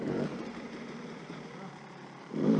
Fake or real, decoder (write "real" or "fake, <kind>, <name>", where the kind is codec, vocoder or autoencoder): fake, vocoder, BigVGAN v2